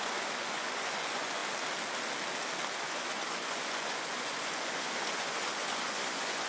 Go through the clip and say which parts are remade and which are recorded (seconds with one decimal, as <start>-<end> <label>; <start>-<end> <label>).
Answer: 0.0-1.4 remade; 1.4-2.8 recorded; 2.8-6.5 remade

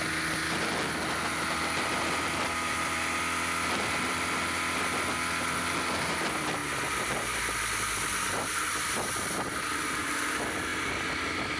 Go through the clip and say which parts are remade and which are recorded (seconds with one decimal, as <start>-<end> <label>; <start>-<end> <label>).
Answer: 0.0-11.6 recorded

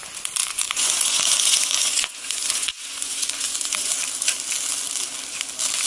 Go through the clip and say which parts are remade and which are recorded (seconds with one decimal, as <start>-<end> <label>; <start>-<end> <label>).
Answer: 0.0-0.4 recorded; 0.4-3.9 remade; 3.9-5.9 recorded

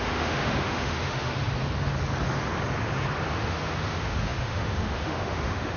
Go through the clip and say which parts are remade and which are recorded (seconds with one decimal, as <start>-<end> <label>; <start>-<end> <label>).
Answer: 0.0-1.3 remade; 1.3-3.3 recorded; 3.3-5.8 remade